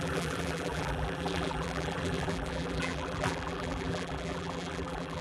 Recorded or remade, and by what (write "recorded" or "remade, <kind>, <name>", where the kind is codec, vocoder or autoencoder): remade, vocoder, BigVGAN v2